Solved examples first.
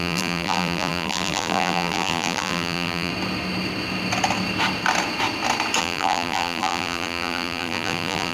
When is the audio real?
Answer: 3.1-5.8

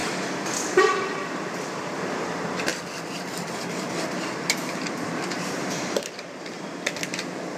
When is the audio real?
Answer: none

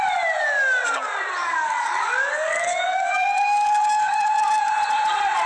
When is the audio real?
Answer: 0.0-1.4; 4.7-5.5